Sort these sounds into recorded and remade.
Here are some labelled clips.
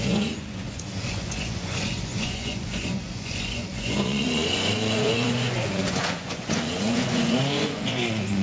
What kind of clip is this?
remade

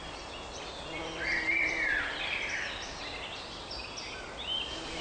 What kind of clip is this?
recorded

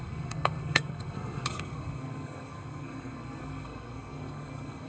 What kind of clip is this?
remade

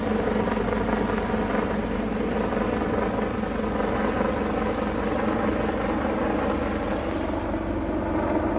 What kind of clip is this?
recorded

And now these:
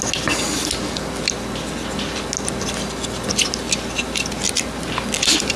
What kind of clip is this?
recorded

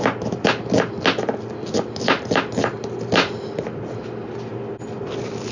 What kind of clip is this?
recorded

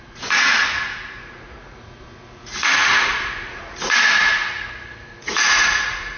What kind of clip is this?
remade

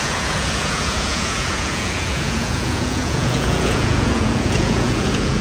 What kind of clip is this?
remade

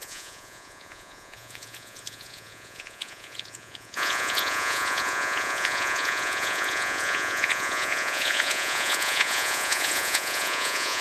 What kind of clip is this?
remade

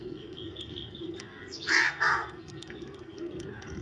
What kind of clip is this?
remade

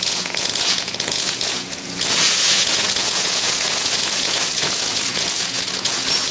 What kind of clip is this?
remade